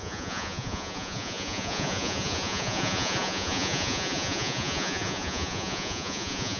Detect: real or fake fake